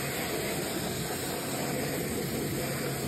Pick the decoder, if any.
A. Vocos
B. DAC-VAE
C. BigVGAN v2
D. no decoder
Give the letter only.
D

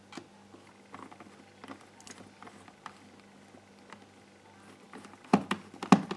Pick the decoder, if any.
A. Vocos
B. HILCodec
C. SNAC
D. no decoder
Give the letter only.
D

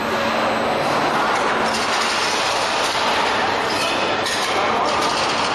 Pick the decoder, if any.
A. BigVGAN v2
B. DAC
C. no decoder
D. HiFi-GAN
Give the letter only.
C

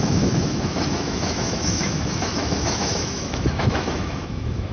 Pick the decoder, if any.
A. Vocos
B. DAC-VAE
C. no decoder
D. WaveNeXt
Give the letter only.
B